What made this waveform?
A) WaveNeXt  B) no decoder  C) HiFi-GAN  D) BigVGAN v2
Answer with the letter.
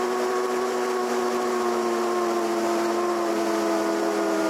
B